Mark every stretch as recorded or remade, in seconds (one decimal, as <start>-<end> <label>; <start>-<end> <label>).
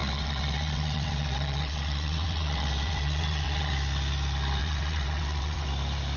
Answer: 0.0-3.7 remade; 3.7-4.6 recorded; 4.6-5.7 remade; 5.7-6.2 recorded